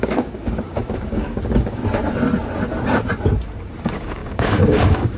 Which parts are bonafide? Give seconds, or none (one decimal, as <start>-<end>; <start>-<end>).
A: 1.8-3.8